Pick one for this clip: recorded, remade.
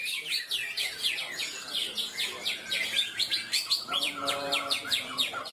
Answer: remade